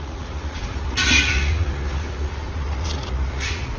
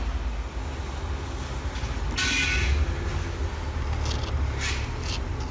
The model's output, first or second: first